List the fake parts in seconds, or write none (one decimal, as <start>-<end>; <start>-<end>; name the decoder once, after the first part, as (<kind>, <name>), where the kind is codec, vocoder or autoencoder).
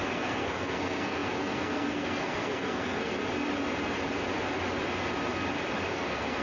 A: 0.0-3.2 (codec, SNAC); 5.9-6.4